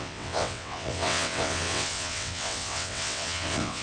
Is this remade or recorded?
remade